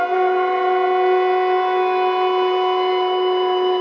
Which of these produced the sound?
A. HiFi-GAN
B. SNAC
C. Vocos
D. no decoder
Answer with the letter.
D